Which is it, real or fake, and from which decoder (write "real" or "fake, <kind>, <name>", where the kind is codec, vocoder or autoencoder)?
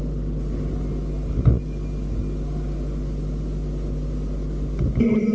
real